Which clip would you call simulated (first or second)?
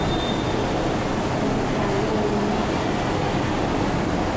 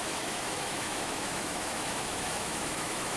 second